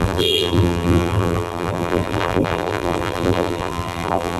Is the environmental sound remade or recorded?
remade